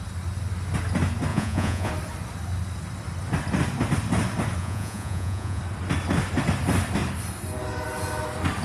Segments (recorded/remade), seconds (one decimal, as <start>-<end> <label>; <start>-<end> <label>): 0.0-1.3 recorded; 1.3-1.9 remade; 1.9-4.6 recorded; 4.6-5.6 remade; 5.6-8.6 recorded